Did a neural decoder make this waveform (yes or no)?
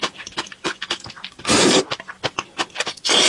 no